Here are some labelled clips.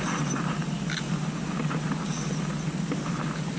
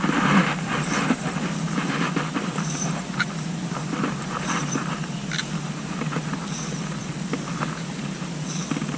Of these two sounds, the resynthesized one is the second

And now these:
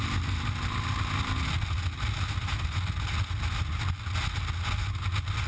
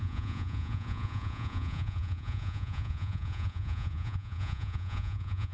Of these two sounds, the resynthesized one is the second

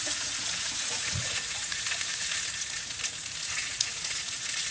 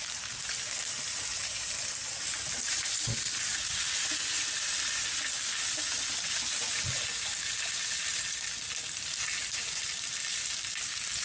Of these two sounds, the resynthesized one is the first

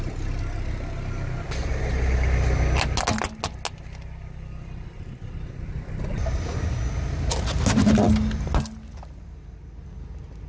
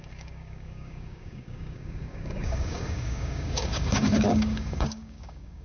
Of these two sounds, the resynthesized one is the second